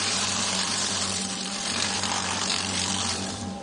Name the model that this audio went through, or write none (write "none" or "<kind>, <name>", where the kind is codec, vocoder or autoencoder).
vocoder, BigVGAN v2